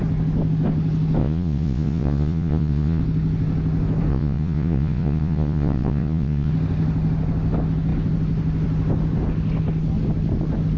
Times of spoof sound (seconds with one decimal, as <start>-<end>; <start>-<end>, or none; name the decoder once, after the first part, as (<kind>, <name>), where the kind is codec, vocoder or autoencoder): 1.2-3.0 (vocoder, Vocos); 4.1-6.5